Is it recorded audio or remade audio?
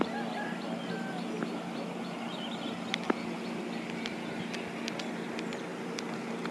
recorded